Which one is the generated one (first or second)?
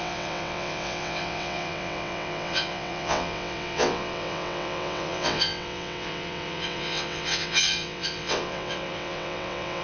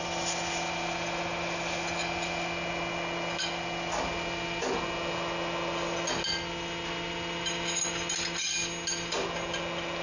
first